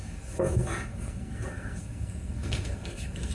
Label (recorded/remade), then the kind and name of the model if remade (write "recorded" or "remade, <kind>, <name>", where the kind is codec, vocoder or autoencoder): remade, codec, SNAC